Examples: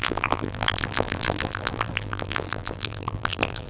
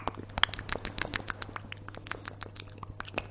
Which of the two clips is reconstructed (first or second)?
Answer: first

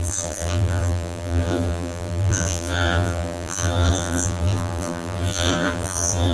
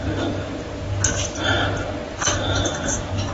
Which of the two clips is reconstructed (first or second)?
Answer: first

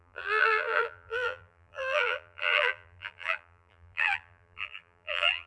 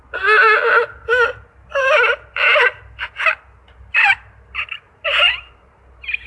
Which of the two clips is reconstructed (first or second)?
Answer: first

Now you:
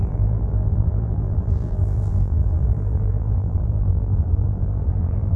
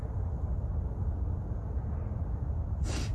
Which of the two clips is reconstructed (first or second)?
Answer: first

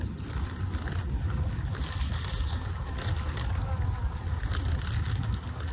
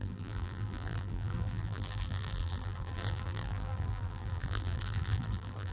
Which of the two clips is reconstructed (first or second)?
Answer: second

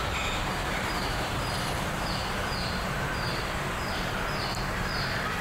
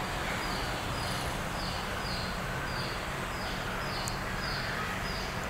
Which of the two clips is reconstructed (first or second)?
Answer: first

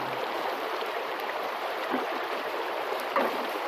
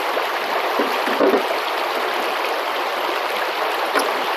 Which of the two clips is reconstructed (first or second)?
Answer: first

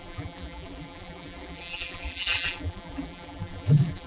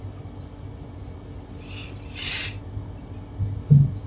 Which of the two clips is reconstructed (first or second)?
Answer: first